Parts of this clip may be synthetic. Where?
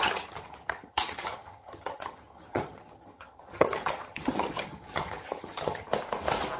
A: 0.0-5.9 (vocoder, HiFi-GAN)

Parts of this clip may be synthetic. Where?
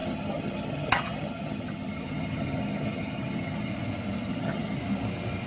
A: 0.0-3.7 (vocoder, HiFi-GAN); 4.3-4.8